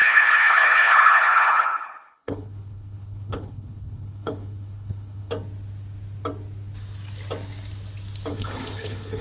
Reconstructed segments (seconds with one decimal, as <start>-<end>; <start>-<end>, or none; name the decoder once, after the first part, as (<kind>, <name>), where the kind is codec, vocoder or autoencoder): 0.0-5.3 (codec, HILCodec); 8.3-9.2